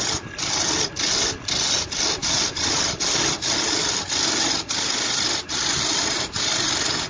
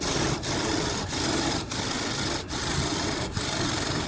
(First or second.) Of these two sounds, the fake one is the second